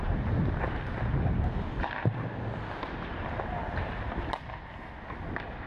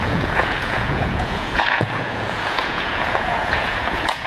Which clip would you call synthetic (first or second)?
second